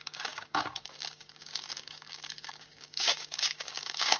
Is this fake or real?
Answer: fake